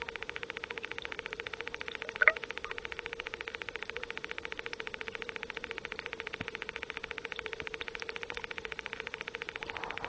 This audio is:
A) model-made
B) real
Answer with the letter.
A